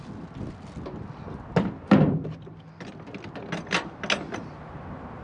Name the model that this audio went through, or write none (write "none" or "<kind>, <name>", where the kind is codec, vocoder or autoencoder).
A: none